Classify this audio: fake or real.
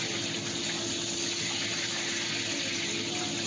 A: real